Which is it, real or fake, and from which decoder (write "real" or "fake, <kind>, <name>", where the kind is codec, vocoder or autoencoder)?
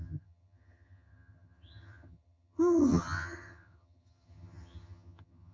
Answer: fake, vocoder, HiFi-GAN